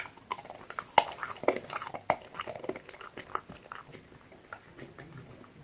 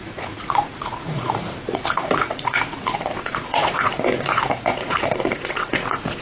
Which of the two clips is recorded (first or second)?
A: first